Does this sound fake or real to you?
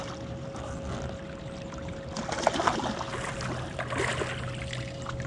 real